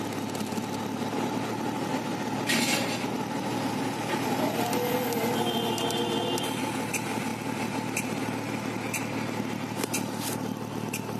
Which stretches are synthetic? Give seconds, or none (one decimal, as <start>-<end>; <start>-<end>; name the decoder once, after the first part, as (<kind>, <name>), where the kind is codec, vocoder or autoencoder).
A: none

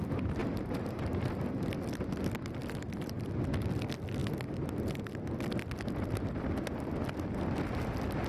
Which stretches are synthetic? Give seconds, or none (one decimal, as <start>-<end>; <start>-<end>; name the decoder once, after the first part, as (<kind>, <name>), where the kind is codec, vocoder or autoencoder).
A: 0.4-1.4 (vocoder, BigVGAN v2); 2.6-3.3

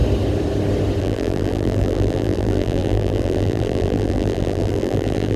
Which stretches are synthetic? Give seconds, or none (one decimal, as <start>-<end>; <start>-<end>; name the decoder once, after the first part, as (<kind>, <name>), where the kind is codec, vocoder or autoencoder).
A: 1.0-5.4 (vocoder, BigVGAN v2)

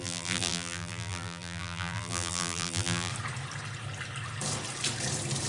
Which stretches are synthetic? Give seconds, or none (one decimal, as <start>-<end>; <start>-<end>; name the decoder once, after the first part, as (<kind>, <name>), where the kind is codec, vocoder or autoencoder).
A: 0.0-3.1 (vocoder, BigVGAN v2)

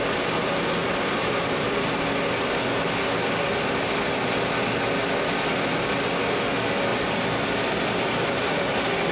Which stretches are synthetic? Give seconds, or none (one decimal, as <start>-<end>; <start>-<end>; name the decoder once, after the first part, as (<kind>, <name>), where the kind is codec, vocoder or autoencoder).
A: 6.9-8.7 (vocoder, BigVGAN v2)

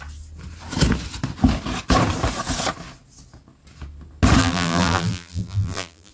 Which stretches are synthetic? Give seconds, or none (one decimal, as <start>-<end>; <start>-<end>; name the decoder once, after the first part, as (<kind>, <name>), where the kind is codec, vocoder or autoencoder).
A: 4.4-6.1 (vocoder, BigVGAN v2)